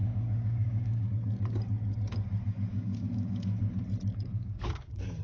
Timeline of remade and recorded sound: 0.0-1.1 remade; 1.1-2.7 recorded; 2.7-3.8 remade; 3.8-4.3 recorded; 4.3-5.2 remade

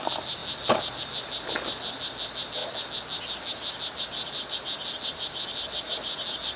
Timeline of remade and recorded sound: 0.0-6.6 recorded

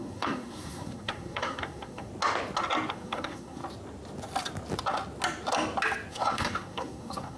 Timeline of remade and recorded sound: 0.0-2.1 remade; 2.1-2.9 recorded; 2.9-3.6 remade; 3.6-6.1 recorded; 6.1-7.4 remade

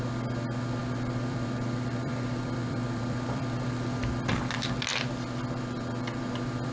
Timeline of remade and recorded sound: 0.0-0.8 recorded; 0.8-4.0 remade; 4.0-6.7 recorded

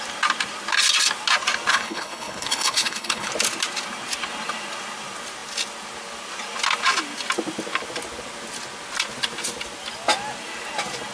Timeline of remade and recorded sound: 0.0-1.7 recorded; 1.7-3.3 remade; 3.3-11.1 recorded

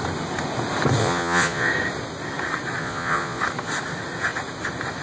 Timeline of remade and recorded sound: 0.0-1.0 recorded; 1.0-1.7 remade; 1.7-2.8 recorded; 2.8-3.4 remade; 3.4-5.0 recorded

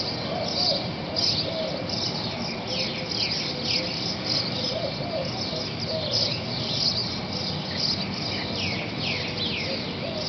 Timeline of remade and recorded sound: 0.0-10.3 recorded

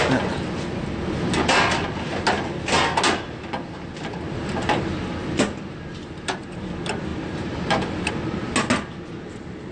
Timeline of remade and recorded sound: 0.0-5.2 recorded; 5.2-6.4 remade; 6.4-7.1 recorded; 7.1-8.1 remade; 8.1-9.7 recorded